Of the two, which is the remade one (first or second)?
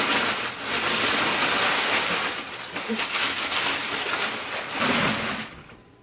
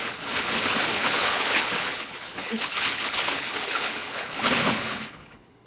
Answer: second